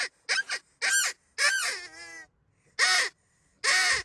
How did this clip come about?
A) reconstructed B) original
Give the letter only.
B